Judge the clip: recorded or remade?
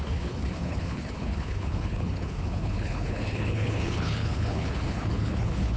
remade